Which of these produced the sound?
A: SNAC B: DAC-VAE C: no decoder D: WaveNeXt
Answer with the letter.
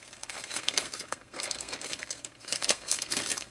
A